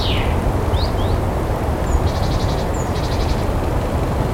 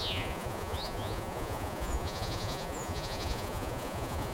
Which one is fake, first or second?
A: second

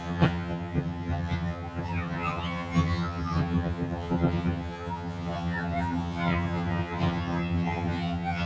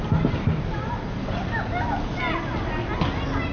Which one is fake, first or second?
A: first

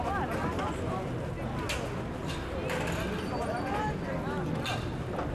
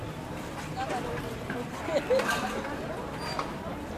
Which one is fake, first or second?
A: second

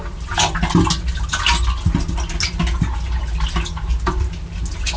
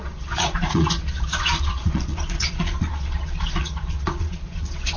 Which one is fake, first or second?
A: second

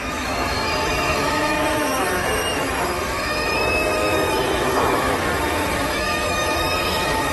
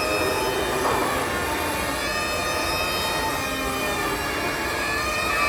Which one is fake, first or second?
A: first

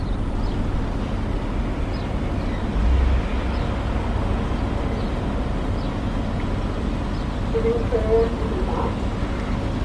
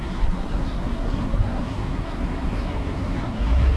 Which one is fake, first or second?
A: second